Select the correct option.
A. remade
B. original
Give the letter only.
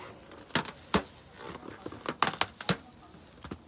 B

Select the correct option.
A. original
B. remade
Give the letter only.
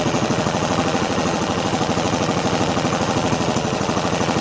B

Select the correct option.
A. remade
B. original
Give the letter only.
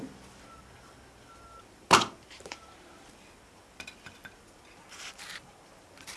B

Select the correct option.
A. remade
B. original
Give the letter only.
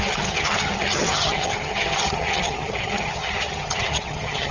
A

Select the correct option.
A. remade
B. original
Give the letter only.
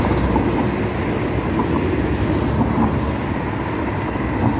B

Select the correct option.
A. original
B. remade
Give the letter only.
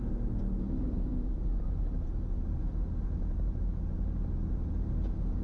A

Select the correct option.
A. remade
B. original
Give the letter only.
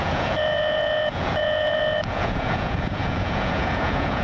A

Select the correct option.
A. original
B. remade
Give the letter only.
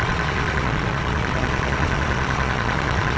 B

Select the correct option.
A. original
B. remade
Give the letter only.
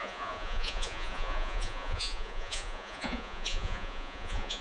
B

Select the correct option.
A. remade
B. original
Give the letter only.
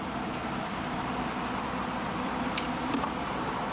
B